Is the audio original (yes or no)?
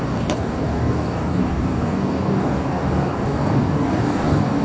no